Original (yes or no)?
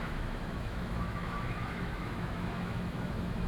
no